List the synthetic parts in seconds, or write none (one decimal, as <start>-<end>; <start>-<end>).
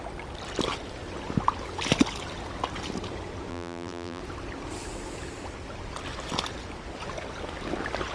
3.5-4.2